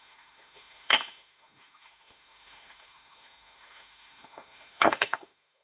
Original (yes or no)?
no